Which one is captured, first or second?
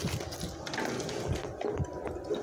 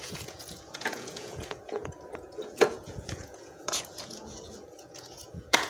first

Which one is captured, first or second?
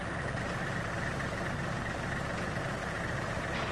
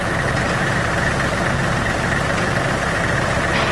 second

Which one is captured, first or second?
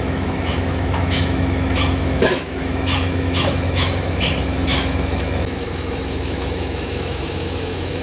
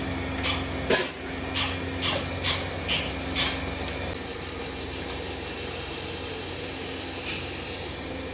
second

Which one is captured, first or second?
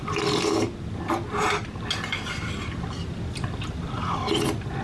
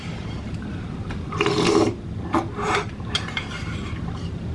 first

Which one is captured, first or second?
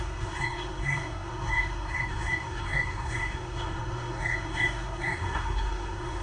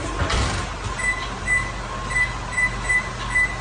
second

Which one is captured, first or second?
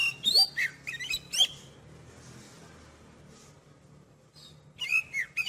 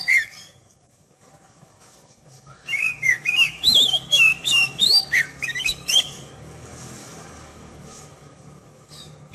first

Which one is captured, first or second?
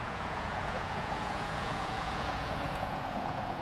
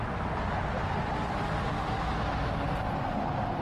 second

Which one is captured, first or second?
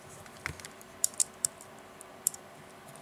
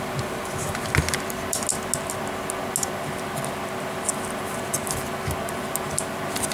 second